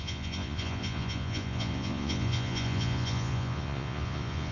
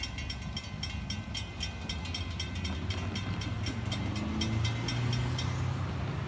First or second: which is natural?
second